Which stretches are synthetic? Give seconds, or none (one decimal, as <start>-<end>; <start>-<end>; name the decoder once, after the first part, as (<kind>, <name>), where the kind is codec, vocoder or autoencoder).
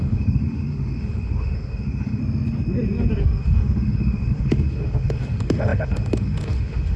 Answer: 0.0-2.2 (autoencoder, DAC-VAE); 3.2-7.0